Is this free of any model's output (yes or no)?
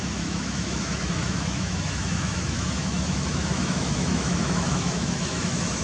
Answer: no